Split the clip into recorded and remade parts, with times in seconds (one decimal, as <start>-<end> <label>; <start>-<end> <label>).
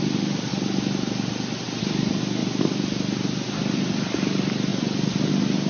0.0-2.4 recorded; 2.4-3.9 remade; 3.9-5.7 recorded